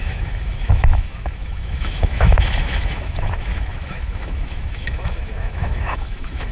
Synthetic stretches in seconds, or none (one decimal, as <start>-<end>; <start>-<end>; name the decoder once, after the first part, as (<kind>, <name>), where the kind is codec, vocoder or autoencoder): 0.0-6.5 (autoencoder, DAC-VAE)